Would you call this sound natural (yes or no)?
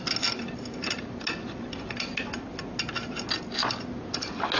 yes